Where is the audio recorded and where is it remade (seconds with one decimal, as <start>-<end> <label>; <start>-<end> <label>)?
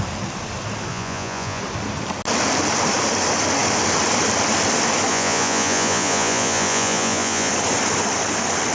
0.0-0.9 recorded; 0.9-1.6 remade; 1.6-5.1 recorded; 5.1-7.5 remade; 7.5-8.7 recorded